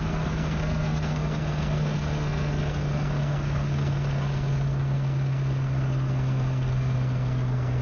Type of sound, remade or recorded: remade